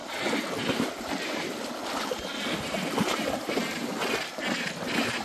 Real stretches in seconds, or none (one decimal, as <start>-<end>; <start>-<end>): 0.0-5.2